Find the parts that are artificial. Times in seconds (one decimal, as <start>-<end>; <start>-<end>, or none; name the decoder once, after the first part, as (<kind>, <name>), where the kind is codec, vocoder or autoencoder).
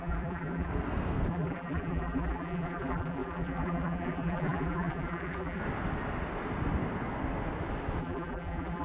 0.0-0.7 (vocoder, BigVGAN v2); 1.3-5.6; 8.0-8.8